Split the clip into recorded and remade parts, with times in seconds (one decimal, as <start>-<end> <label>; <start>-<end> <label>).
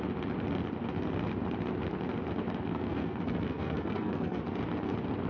0.0-2.7 recorded; 2.7-4.4 remade; 4.4-5.3 recorded